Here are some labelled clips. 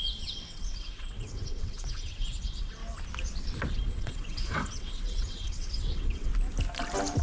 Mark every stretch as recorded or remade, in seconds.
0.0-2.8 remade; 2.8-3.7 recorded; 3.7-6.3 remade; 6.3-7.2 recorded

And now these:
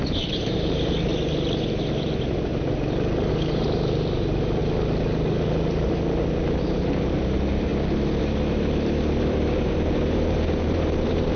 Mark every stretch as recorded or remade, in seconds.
0.0-1.1 remade; 1.1-1.6 recorded; 1.6-2.5 remade; 2.5-3.3 recorded; 3.3-4.6 remade; 4.6-6.6 recorded; 6.6-7.7 remade; 7.7-8.2 recorded; 8.2-11.4 remade

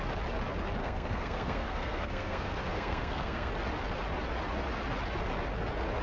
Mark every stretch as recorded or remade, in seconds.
0.0-0.8 recorded; 0.8-3.5 remade; 3.5-6.0 recorded

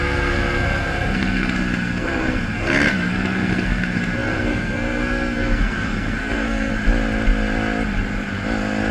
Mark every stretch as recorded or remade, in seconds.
0.0-6.7 remade; 6.7-8.9 recorded

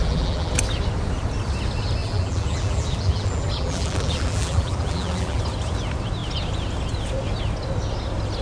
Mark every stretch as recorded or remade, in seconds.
0.0-0.5 remade; 0.5-2.0 recorded; 2.0-5.4 remade; 5.4-8.4 recorded